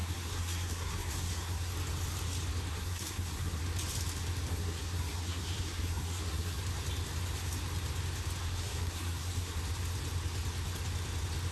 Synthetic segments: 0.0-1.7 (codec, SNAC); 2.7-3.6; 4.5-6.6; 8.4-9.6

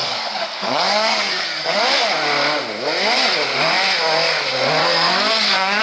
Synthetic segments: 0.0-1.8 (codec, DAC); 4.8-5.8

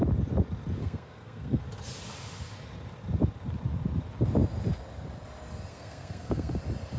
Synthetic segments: 0.8-1.6 (codec, SNAC); 5.7-6.6